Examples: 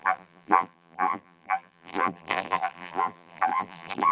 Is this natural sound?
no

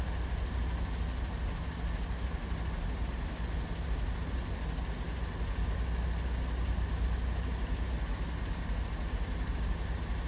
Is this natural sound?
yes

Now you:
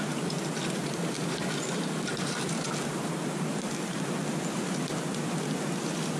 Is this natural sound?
yes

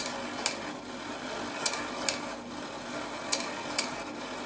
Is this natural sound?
yes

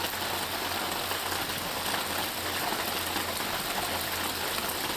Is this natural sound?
yes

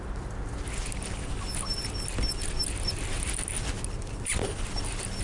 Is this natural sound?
yes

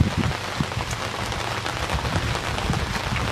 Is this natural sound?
yes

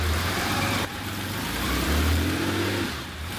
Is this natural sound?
no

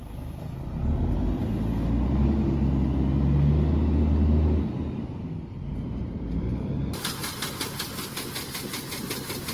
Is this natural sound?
yes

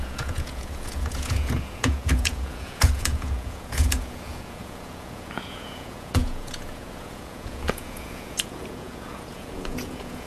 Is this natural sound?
no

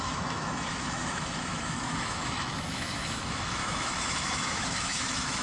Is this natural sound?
no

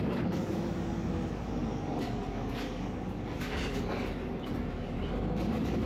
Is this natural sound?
no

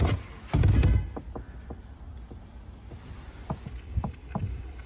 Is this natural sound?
yes